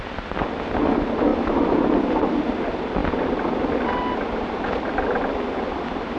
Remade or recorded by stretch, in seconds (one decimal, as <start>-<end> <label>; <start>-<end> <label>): 0.0-1.3 recorded; 1.3-1.9 remade; 1.9-6.2 recorded